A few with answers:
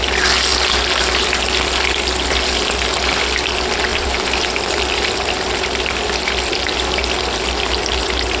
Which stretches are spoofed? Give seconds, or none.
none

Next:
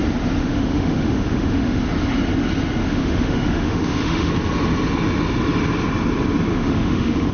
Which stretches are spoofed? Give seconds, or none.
0.4-1.8 (autoencoder, DAC-VAE); 2.8-4.3; 6.5-7.3

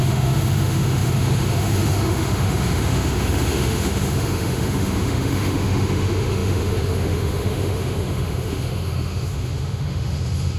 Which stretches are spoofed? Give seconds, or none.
0.0-10.6 (autoencoder, DAC-VAE)

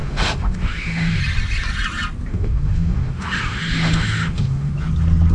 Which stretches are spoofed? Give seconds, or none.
0.0-1.2 (autoencoder, DAC-VAE); 2.3-4.7

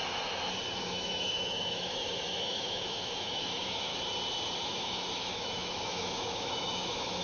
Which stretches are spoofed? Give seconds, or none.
0.8-3.9 (autoencoder, DAC-VAE); 4.6-7.2

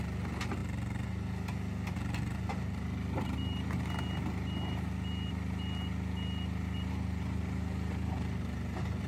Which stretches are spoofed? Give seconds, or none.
none

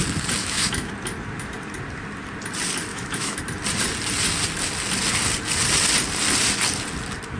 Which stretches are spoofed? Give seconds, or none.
0.4-0.9 (autoencoder, DAC-VAE); 2.9-3.4